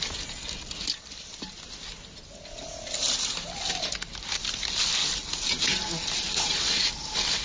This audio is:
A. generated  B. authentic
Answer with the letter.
B